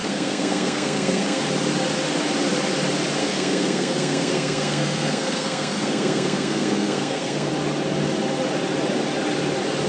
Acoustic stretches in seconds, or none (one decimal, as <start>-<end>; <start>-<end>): 1.4-3.2; 7.5-9.9